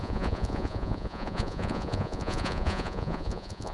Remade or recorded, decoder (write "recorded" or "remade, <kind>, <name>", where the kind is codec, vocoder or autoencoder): remade, vocoder, Vocos